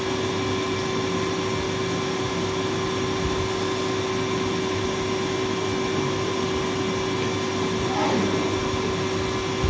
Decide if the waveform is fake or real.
real